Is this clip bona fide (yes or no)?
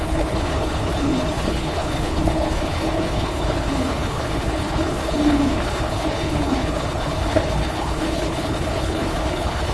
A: no